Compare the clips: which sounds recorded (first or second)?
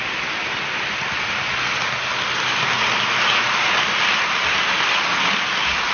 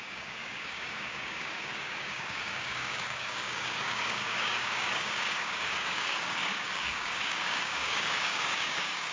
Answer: first